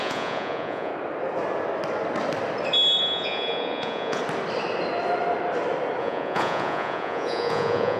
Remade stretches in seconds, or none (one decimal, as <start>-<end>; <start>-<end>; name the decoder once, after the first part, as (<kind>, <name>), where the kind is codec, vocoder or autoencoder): 0.0-0.9 (vocoder, Vocos); 3.0-4.2; 6.0-8.0